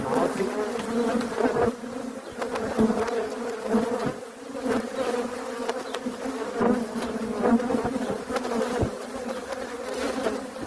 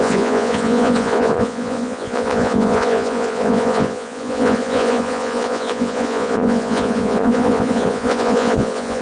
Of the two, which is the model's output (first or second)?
second